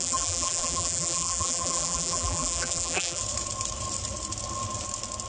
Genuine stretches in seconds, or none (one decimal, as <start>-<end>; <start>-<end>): 3.2-5.3